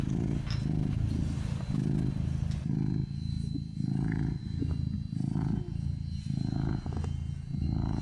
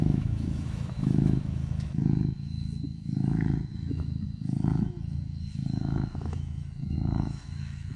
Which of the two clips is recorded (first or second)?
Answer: first